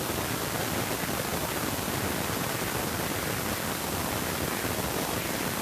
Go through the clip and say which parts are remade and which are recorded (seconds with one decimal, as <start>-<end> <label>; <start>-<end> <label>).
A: 0.0-5.6 recorded

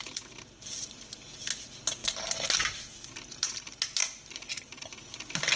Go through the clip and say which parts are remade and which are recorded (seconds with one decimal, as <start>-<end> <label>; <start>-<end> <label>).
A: 0.0-5.6 recorded

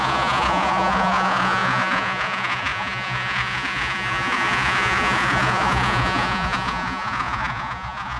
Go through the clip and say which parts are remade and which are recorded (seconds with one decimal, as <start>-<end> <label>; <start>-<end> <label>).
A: 0.0-8.2 remade